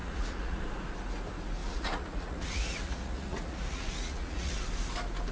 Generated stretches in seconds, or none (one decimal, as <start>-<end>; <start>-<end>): 0.0-0.6; 1.6-4.5